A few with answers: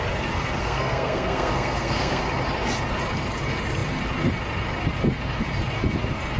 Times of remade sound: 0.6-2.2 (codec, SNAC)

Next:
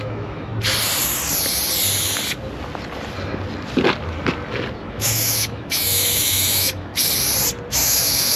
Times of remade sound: 0.0-0.5 (autoencoder, DAC-VAE); 4.8-6.9; 7.7-8.4

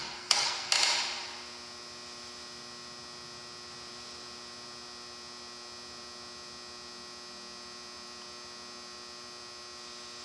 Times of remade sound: 0.0-0.7 (codec, SNAC)

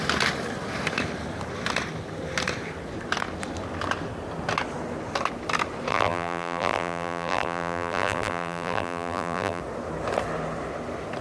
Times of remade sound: 5.9-9.6 (vocoder, BigVGAN v2)

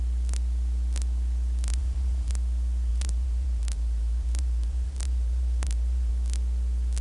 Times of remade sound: 1.7-2.3 (vocoder, BigVGAN v2); 2.9-6.1